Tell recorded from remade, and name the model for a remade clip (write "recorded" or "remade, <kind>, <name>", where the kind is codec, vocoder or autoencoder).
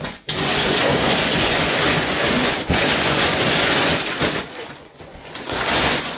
remade, vocoder, Vocos